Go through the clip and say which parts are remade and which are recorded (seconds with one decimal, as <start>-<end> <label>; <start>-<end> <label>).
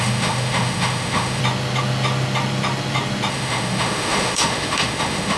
0.0-1.4 remade; 1.4-3.3 recorded; 3.3-5.4 remade